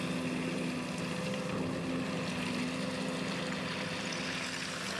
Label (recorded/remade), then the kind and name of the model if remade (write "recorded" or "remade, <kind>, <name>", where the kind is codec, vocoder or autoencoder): recorded